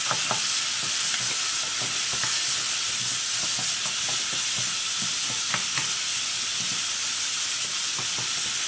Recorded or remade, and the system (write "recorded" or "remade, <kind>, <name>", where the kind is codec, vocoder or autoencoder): recorded